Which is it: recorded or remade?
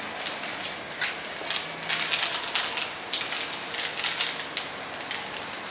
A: recorded